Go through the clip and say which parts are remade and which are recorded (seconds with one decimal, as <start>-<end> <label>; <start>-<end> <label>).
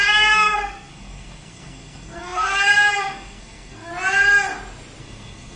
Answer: 0.0-3.9 remade; 3.9-5.0 recorded; 5.0-5.6 remade